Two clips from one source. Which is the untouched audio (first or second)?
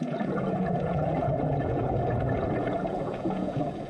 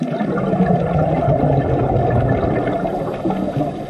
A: second